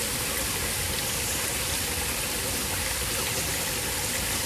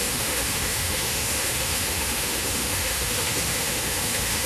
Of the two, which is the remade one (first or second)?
second